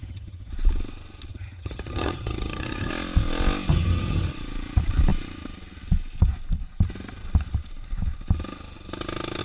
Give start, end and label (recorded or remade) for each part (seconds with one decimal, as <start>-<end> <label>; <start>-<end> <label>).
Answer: 0.0-0.5 remade; 0.5-1.3 recorded; 1.3-2.9 remade; 2.9-3.7 recorded; 3.7-4.3 remade; 4.3-9.4 recorded